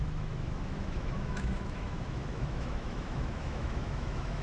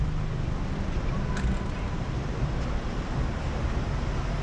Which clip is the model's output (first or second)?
first